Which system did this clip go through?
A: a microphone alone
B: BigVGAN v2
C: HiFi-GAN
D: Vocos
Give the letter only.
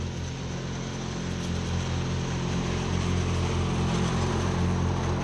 B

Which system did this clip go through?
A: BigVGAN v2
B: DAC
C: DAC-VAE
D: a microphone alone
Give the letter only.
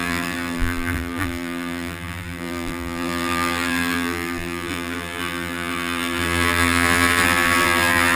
A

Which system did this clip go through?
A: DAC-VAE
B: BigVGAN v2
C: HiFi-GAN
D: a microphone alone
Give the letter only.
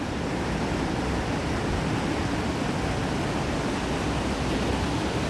D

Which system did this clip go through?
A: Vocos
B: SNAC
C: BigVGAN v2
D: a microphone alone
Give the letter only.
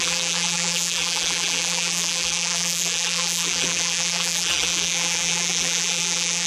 C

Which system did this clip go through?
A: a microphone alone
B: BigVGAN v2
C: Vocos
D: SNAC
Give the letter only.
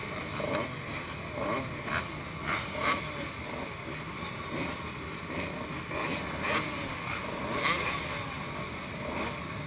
A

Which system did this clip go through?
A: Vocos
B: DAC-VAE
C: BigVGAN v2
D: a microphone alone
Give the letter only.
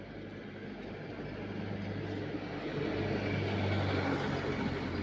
D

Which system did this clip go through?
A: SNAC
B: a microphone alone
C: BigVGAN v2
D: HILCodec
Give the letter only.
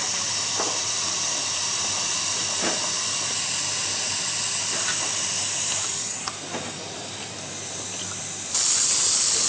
C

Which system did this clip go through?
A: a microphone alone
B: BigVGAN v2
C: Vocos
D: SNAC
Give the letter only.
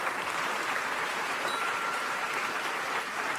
B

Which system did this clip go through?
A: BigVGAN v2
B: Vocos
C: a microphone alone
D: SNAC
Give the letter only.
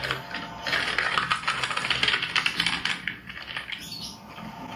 C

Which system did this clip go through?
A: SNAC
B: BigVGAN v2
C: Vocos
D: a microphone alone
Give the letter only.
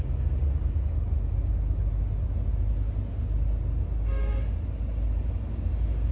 D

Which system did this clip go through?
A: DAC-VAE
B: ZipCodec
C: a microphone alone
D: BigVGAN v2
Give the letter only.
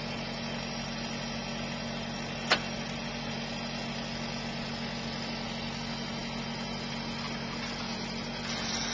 C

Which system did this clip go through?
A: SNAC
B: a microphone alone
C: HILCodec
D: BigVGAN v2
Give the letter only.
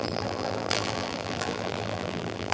D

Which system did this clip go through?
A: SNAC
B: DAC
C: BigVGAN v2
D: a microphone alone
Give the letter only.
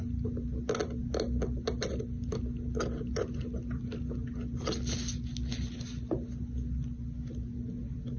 D